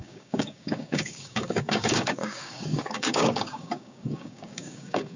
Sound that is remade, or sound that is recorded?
remade